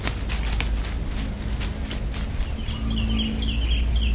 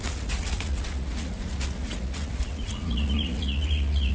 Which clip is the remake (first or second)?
second